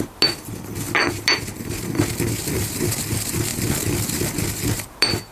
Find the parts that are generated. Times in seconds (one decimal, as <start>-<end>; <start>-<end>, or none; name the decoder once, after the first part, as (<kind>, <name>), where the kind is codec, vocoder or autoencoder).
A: none